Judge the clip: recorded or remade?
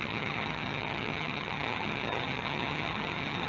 remade